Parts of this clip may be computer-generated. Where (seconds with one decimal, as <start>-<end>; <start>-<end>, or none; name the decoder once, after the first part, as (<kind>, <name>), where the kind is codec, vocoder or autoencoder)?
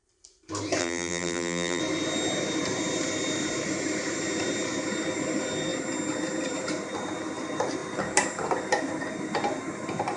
0.8-1.8 (vocoder, BigVGAN v2)